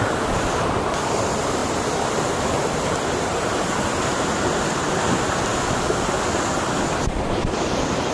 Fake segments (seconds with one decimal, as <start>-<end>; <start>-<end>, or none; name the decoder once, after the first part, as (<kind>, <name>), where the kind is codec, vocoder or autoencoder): none

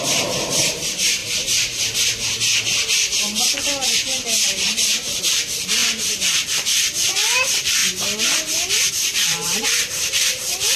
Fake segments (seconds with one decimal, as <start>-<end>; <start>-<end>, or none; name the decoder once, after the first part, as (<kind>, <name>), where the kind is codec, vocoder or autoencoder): 0.0-1.2 (vocoder, BigVGAN v2); 5.3-7.8; 8.9-10.8

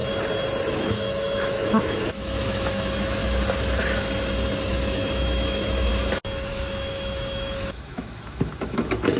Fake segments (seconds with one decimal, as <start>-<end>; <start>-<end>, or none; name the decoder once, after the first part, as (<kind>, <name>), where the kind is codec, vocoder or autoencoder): 0.7-3.2 (autoencoder, DAC-VAE); 4.7-5.9; 6.5-9.2

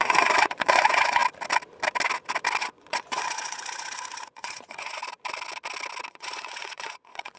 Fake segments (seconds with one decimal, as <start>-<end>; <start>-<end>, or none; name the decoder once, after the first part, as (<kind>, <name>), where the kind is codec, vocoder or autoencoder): 0.0-1.2 (vocoder, Vocos); 2.6-5.0; 6.1-7.4

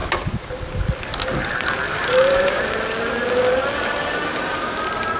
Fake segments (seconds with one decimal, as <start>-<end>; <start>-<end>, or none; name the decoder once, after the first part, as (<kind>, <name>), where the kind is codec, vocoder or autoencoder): 1.9-2.6 (codec, DAC); 4.3-4.8

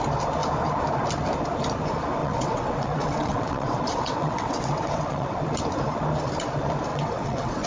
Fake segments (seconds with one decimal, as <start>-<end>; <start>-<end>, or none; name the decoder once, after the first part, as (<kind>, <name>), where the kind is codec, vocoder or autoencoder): 2.2-5.4 (vocoder, WaveNeXt); 6.9-7.7

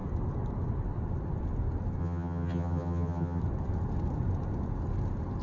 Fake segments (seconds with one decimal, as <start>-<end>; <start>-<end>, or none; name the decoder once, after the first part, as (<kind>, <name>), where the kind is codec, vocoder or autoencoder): 2.0-3.4 (vocoder, HiFi-GAN)